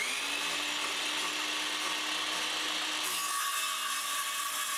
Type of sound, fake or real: real